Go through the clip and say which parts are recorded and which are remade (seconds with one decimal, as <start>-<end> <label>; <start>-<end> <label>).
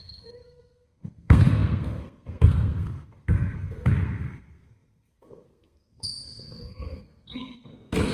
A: 0.0-8.1 remade